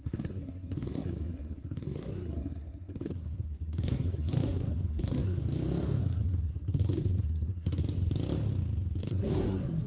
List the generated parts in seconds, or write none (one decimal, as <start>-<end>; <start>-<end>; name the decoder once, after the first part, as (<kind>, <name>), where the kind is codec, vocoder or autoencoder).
0.0-5.4 (codec, SNAC); 6.0-7.8; 9.0-9.9